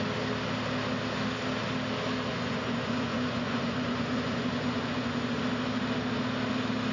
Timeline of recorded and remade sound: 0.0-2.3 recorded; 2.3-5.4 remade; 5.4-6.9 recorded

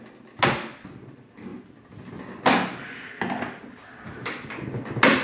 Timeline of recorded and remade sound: 0.0-5.2 recorded

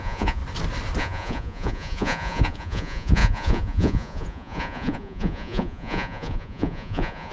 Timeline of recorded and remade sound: 0.0-0.4 remade; 0.4-1.0 recorded; 1.0-7.3 remade